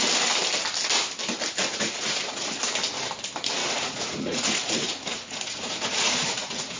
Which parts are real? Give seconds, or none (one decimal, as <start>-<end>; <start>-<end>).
0.0-1.6; 2.6-3.6